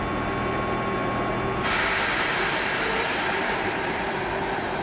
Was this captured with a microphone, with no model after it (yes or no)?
yes